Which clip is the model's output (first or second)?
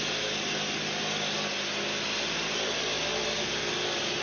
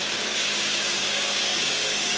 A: second